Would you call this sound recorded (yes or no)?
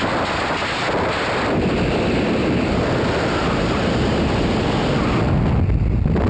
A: yes